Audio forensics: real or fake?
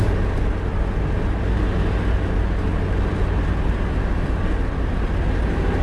real